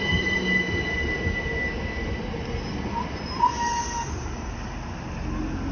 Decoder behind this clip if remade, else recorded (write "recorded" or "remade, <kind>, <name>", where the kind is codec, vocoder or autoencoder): recorded